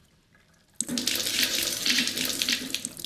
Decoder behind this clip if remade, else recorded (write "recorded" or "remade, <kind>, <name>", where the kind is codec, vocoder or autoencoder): recorded